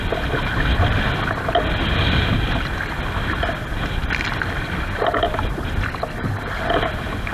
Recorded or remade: recorded